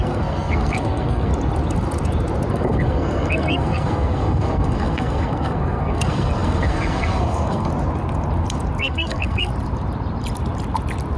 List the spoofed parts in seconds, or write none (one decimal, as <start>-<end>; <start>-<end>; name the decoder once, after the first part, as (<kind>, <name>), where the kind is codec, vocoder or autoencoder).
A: 0.0-1.3 (codec, SNAC); 2.5-7.7; 8.8-9.5